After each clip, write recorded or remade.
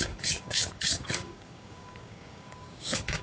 remade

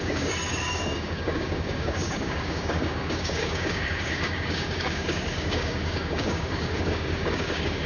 remade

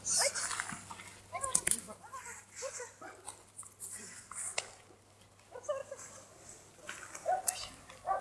recorded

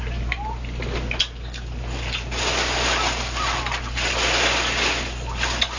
recorded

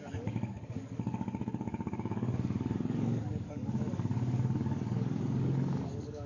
remade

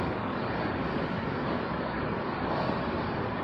remade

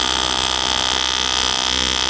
recorded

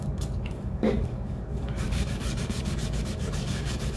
remade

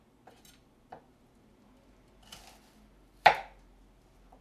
recorded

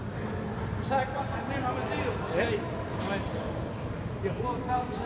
recorded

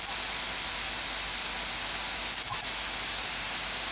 recorded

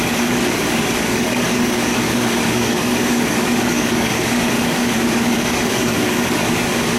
remade